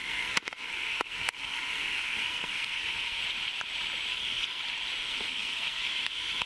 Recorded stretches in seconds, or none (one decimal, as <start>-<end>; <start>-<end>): 3.2-4.1; 4.6-5.0